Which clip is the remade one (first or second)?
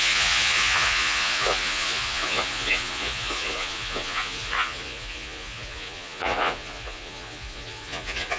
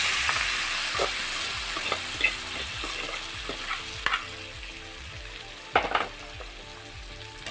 first